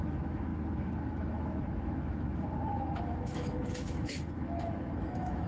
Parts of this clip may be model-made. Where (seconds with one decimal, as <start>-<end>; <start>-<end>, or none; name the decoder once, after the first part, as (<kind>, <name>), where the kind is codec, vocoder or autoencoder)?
0.0-5.5 (autoencoder, DAC-VAE)